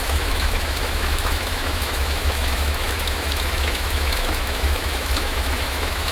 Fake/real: fake